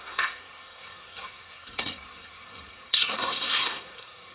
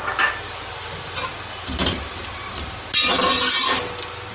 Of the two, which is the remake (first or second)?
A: first